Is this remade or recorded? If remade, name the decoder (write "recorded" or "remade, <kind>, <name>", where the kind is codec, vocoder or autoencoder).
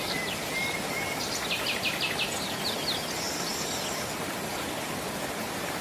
recorded